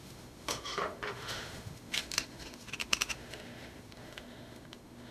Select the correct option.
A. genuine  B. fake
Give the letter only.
B